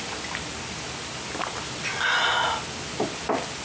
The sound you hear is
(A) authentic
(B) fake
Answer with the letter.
A